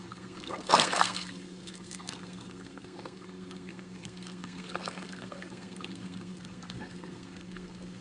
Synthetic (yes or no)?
yes